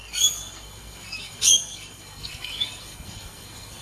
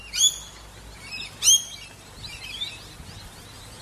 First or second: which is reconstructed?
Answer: first